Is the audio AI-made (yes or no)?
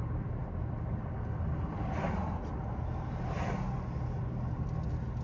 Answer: no